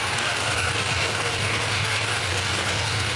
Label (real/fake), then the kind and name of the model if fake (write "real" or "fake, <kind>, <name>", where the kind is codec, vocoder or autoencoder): fake, codec, DAC